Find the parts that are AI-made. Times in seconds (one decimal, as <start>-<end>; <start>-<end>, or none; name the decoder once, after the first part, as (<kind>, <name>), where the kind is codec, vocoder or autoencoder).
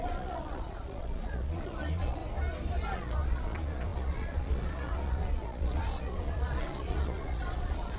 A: 0.0-2.2 (vocoder, Vocos); 2.8-8.0